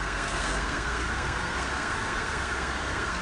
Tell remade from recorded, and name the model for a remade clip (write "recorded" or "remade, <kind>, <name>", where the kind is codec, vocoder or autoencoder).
remade, codec, SNAC